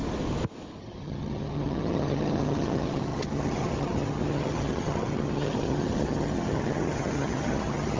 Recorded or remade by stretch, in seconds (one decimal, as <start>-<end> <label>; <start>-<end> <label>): 0.0-0.8 recorded; 0.8-8.0 remade